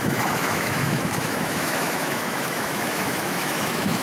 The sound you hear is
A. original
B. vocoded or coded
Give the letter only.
B